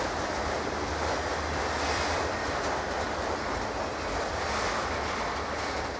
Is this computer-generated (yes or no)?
no